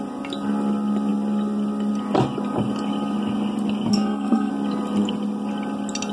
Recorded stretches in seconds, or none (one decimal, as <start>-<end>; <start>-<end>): 0.0-3.9; 4.5-6.1